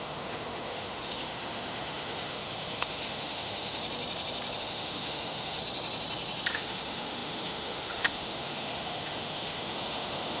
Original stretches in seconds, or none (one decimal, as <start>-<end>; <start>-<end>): 3.8-4.6; 5.6-6.5